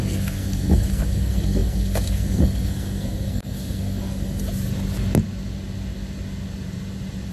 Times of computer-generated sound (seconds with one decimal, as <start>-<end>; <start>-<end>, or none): 0.0-4.4